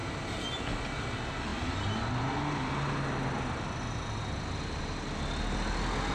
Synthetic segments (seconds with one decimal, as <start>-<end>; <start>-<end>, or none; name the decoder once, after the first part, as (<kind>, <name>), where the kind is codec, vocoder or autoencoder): none